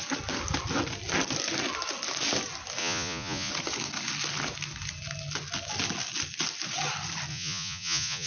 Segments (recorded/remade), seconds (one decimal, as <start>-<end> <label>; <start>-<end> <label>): 0.0-2.8 recorded; 2.8-3.5 remade; 3.5-7.3 recorded; 7.3-8.3 remade